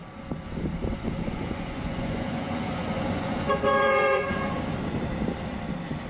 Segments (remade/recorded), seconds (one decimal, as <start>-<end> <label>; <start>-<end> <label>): 0.0-0.9 recorded; 0.9-4.6 remade; 4.6-6.1 recorded